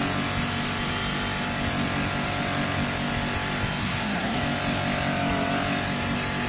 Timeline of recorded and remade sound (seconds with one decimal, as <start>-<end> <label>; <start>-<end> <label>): 0.0-3.8 recorded; 3.8-4.4 remade; 4.4-6.5 recorded

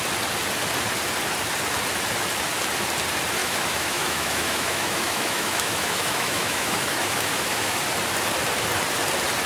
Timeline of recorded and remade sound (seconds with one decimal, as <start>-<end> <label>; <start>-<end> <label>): 0.0-3.4 recorded; 3.4-7.8 remade; 7.8-9.5 recorded

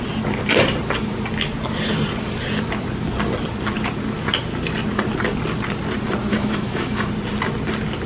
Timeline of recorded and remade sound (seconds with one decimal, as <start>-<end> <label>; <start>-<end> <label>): 0.0-6.3 recorded; 6.3-7.1 remade; 7.1-8.1 recorded

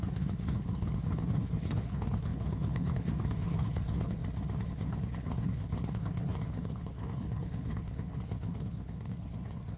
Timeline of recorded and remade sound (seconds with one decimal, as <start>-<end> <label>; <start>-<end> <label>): 0.0-4.2 remade; 4.2-4.7 recorded; 4.7-9.8 remade

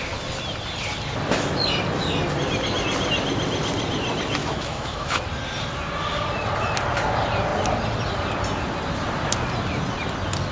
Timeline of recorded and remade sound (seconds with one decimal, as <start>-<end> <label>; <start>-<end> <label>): 0.0-4.4 recorded; 4.4-5.2 remade; 5.2-10.5 recorded

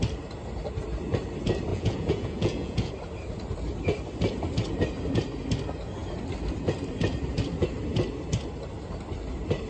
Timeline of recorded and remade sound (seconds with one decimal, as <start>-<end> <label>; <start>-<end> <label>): 0.0-1.7 recorded; 1.7-2.9 remade; 2.9-9.7 recorded

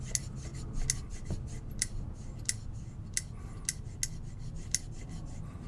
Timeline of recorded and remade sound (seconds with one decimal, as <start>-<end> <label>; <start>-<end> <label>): 0.0-5.7 recorded